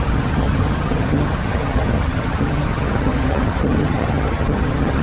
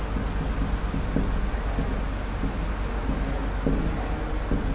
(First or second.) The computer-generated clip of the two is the first